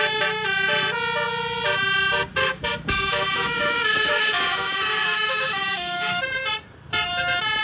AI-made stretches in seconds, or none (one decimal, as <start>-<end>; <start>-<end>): 2.4-6.2